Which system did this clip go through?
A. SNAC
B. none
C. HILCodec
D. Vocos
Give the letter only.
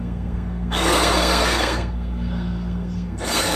A